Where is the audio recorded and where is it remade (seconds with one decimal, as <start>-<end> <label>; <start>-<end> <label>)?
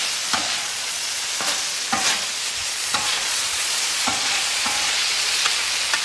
0.0-0.4 recorded; 0.4-1.2 remade; 1.2-2.6 recorded; 2.6-5.5 remade; 5.5-6.0 recorded